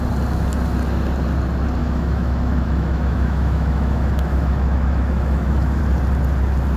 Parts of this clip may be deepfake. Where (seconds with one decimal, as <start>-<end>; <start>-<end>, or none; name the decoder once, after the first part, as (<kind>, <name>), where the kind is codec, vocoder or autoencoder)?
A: 1.8-5.8 (autoencoder, DAC-VAE)